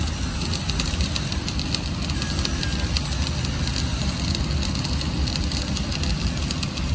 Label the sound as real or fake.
fake